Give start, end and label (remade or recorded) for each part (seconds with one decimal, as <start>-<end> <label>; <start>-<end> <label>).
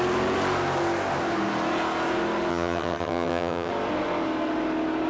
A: 0.0-2.5 recorded; 2.5-3.7 remade; 3.7-5.1 recorded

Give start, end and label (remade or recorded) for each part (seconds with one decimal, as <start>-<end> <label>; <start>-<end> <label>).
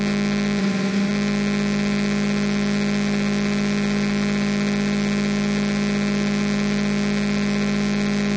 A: 0.0-0.6 recorded; 0.6-1.1 remade; 1.1-8.4 recorded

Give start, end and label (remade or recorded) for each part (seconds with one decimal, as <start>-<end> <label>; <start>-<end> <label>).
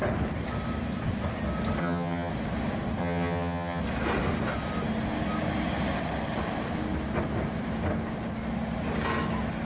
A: 0.0-1.8 recorded; 1.8-2.3 remade; 2.3-3.0 recorded; 3.0-3.8 remade; 3.8-9.6 recorded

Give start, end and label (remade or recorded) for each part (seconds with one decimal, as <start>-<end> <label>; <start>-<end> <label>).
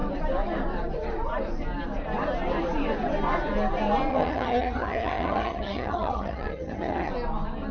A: 0.0-4.1 recorded; 4.1-7.1 remade; 7.1-7.7 recorded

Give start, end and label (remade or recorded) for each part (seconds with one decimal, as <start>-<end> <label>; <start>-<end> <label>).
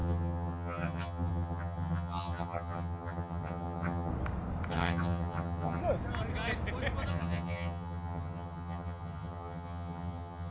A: 0.0-4.1 remade; 4.1-4.7 recorded; 4.7-5.8 remade; 5.8-7.1 recorded; 7.1-10.5 remade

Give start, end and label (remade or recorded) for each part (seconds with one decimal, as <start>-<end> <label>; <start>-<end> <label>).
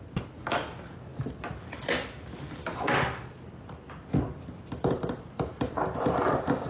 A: 0.0-6.7 recorded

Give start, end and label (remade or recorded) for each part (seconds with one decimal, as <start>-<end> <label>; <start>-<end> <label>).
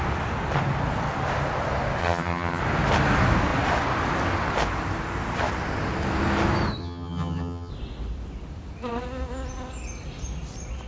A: 0.0-2.0 recorded; 2.0-2.6 remade; 2.6-6.8 recorded; 6.8-7.7 remade; 7.7-10.9 recorded